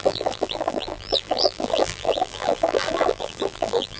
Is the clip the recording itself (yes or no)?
no